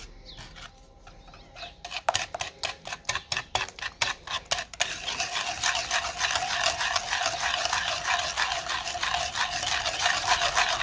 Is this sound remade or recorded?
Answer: recorded